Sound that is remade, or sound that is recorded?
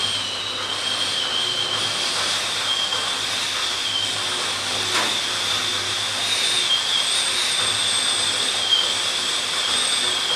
recorded